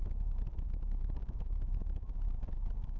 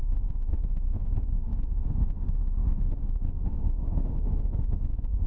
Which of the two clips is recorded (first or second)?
first